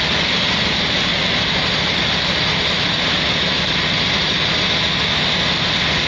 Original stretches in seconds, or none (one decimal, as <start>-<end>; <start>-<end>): 0.0-6.1